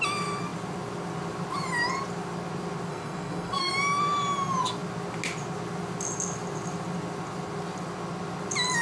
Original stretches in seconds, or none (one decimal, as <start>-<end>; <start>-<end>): 0.0-2.9; 3.7-8.8